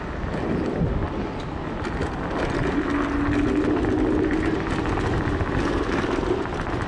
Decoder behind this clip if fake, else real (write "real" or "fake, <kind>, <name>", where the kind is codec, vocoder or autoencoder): real